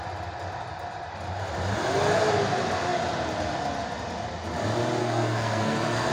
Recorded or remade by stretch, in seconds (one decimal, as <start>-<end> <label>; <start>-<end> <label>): 0.0-5.0 recorded; 5.0-6.1 remade